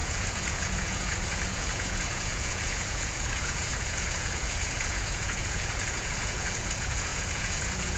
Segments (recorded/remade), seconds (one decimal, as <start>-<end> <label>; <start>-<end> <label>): 0.0-8.0 remade